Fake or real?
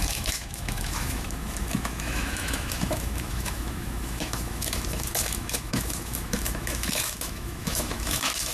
fake